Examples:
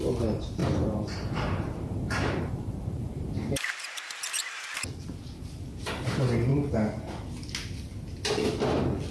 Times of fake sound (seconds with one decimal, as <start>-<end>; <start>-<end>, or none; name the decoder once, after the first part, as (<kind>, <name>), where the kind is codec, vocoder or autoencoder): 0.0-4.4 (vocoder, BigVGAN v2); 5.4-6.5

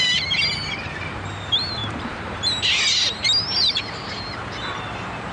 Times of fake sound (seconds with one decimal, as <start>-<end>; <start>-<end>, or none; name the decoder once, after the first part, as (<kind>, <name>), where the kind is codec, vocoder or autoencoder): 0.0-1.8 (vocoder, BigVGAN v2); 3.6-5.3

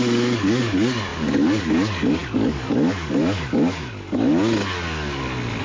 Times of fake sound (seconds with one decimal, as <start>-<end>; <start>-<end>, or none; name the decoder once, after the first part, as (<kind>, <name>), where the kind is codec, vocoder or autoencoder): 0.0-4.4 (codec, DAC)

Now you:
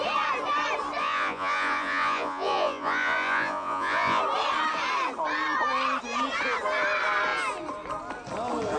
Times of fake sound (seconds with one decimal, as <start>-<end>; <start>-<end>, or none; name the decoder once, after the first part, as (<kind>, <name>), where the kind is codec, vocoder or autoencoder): 1.0-4.2 (vocoder, Vocos)